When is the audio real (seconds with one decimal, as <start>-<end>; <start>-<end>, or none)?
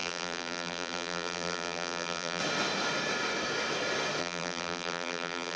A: 2.4-4.2